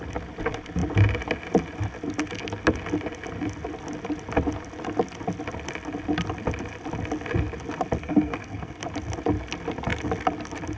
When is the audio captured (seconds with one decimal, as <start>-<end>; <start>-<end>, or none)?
0.0-8.0; 8.8-10.8